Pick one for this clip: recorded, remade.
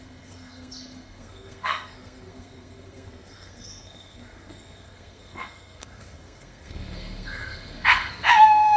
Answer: remade